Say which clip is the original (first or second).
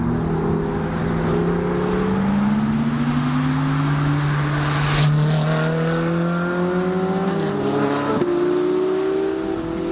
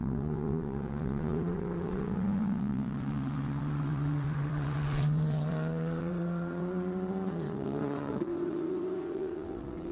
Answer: first